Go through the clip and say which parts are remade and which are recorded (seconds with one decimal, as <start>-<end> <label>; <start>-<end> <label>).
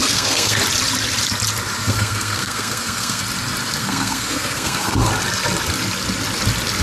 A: 0.0-0.6 remade; 0.6-1.8 recorded; 1.8-3.2 remade; 3.2-3.8 recorded; 3.8-5.1 remade; 5.1-6.8 recorded